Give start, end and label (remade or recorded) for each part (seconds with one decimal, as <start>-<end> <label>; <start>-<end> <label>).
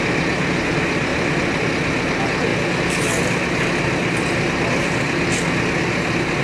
0.0-6.4 recorded